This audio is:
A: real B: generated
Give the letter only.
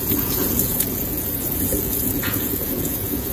B